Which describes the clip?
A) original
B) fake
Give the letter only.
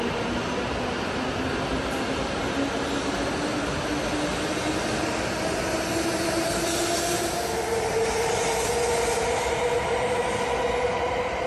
A